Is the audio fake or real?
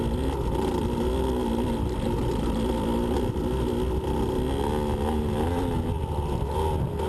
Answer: real